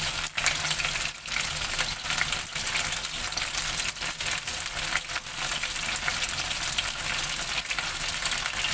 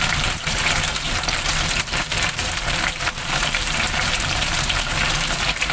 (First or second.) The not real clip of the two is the second